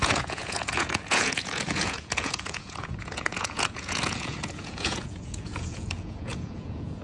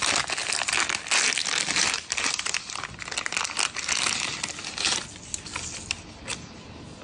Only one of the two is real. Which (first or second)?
second